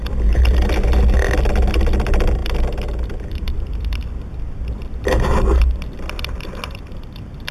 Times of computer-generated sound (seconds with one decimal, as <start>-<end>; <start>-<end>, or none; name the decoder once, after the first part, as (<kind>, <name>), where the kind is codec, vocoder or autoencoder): none